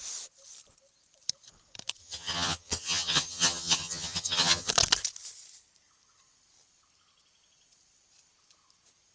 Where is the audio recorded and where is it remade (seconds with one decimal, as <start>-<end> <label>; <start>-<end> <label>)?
0.0-2.0 recorded; 2.0-4.7 remade; 4.7-9.1 recorded